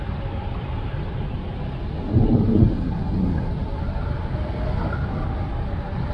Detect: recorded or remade recorded